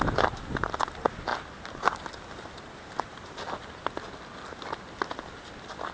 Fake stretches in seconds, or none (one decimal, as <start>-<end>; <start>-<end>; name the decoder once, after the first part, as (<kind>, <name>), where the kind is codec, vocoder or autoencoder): none